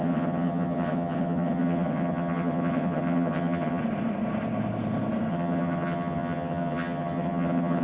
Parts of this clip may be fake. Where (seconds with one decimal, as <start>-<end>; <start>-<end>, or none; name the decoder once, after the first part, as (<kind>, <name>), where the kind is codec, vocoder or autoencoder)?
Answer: 0.0-3.8 (vocoder, HiFi-GAN); 5.3-7.8